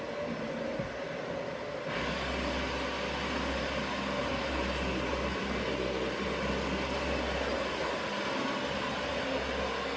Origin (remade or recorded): recorded